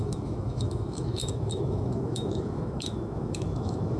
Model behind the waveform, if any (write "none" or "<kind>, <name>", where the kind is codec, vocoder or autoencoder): autoencoder, DAC-VAE